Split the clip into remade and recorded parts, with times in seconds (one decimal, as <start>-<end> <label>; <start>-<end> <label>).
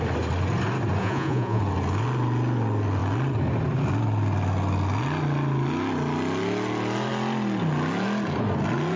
0.0-1.0 recorded; 1.0-1.6 remade; 1.6-9.0 recorded